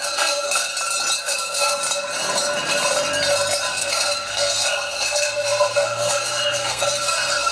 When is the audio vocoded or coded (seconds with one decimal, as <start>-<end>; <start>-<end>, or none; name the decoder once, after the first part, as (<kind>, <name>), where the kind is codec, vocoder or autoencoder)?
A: 0.0-0.7 (codec, SNAC); 1.2-1.8; 3.7-7.5